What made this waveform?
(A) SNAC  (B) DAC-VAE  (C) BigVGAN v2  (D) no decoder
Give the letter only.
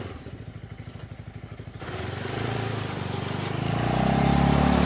C